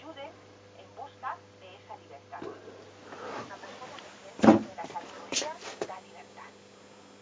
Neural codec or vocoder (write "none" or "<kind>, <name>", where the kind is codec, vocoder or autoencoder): none